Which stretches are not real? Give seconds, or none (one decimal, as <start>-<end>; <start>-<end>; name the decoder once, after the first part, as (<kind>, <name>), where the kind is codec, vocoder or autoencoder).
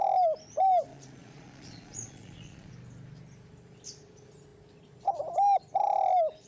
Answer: 0.9-2.7 (vocoder, Vocos)